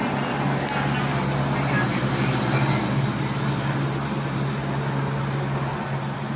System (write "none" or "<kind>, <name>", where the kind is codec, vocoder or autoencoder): none